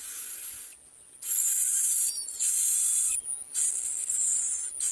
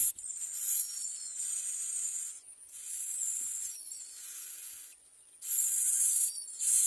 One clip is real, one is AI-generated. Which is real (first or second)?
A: first